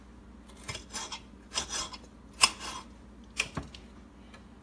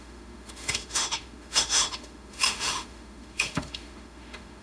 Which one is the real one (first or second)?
first